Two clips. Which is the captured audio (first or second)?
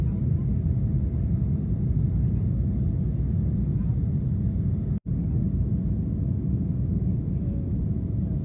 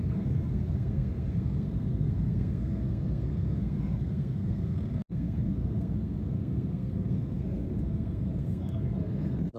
first